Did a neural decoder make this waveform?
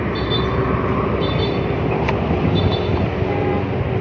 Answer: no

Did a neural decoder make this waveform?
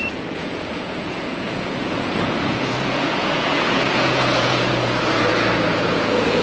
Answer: yes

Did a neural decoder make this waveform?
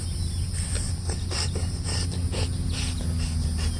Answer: no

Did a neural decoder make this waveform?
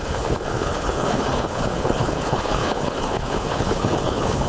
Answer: yes